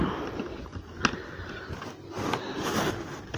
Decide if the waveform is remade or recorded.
recorded